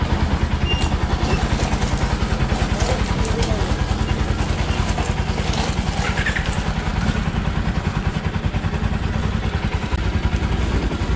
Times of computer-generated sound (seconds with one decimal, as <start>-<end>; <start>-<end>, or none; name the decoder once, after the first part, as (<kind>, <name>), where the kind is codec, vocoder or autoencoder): none